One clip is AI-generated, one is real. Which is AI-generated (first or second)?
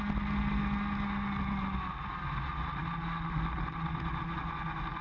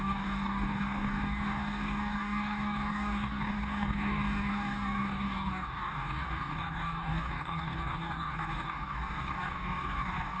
second